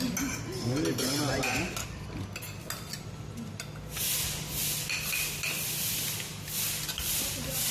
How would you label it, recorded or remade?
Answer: recorded